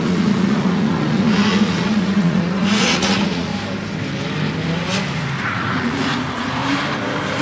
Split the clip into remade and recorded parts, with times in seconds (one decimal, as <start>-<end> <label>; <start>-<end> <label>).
0.0-3.5 remade; 3.5-5.4 recorded; 5.4-6.6 remade; 6.6-7.4 recorded